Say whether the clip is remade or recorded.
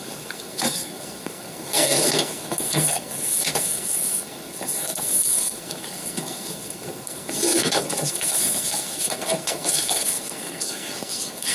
remade